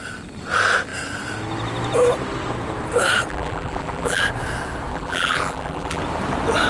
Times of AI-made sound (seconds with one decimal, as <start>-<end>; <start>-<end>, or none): 3.3-4.2; 4.9-6.0